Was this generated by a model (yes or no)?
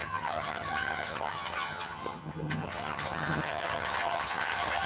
yes